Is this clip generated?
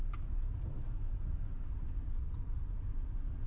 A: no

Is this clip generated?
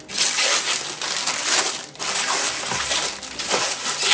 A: no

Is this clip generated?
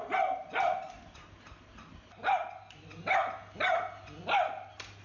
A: no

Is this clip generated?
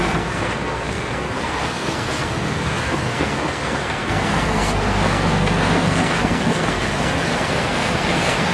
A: yes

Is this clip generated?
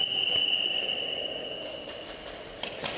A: yes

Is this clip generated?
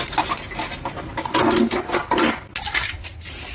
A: no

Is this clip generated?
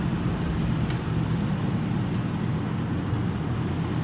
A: yes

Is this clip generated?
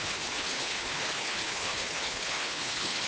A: yes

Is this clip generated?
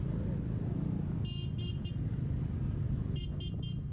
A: no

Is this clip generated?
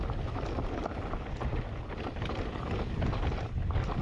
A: no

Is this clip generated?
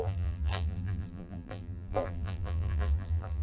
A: yes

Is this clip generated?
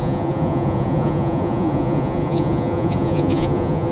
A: yes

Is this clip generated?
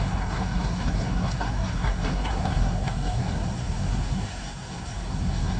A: yes